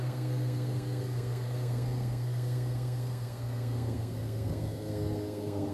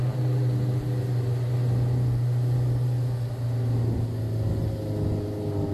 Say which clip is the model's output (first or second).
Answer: first